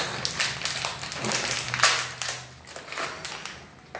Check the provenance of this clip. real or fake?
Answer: real